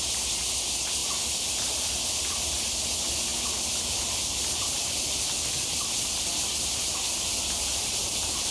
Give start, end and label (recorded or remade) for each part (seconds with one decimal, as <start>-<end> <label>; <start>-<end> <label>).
0.0-8.5 recorded